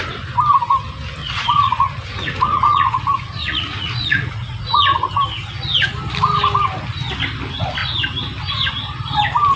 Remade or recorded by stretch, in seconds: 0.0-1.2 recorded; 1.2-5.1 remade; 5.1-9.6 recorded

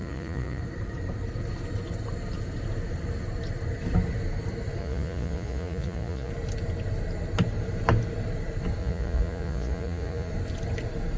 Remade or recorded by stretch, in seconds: 0.0-0.6 remade; 0.6-4.8 recorded; 4.8-6.3 remade; 6.3-8.8 recorded; 8.8-10.3 remade; 10.3-11.2 recorded

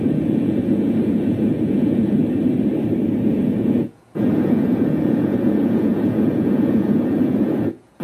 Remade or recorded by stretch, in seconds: 0.0-2.2 remade; 2.2-3.3 recorded; 3.3-8.0 remade

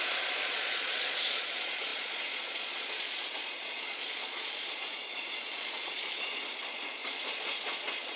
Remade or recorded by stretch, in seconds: 0.0-8.2 remade

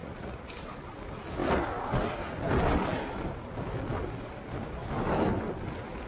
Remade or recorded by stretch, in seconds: 0.0-0.5 remade; 0.5-6.1 recorded